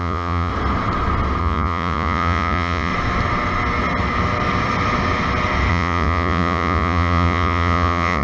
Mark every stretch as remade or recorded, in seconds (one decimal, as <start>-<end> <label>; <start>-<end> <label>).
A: 0.0-0.5 remade; 0.5-1.4 recorded; 1.4-2.9 remade; 2.9-5.7 recorded; 5.7-8.2 remade